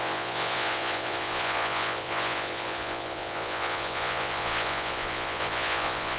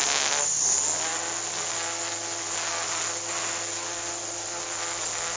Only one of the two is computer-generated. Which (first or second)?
first